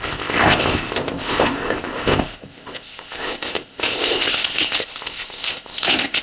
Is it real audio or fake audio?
fake